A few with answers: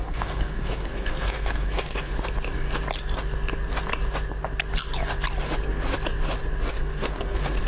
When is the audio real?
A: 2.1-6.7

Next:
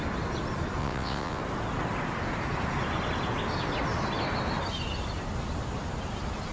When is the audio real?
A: 0.0-0.8; 1.4-6.5

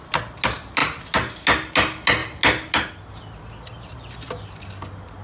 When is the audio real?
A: 0.0-5.2

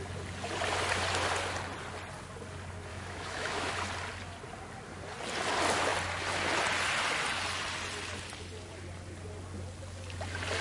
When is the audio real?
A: 0.0-2.9; 3.7-10.6

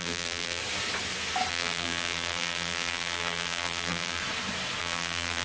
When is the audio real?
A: 0.6-1.5; 4.2-4.8